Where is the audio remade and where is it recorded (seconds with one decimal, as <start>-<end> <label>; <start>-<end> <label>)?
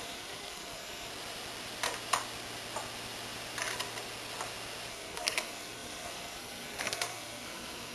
0.0-1.1 remade; 1.1-4.9 recorded; 4.9-7.9 remade